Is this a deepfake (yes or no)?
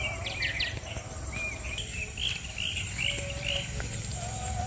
no